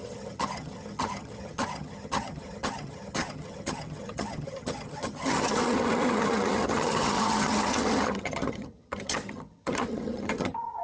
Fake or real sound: fake